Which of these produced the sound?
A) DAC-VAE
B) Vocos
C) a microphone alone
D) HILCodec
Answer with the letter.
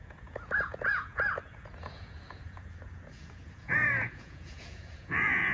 B